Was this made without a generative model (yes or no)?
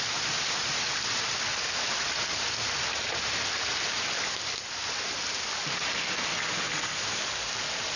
yes